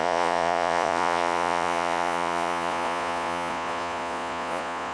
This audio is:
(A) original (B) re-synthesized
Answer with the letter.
B